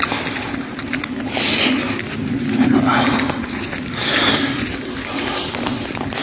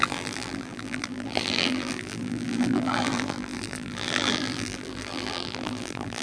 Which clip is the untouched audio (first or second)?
first